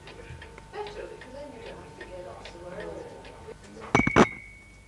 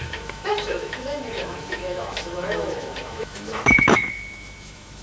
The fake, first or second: second